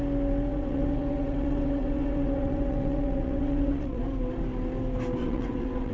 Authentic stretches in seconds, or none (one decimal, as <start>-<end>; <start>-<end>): 0.0-0.5; 4.0-5.2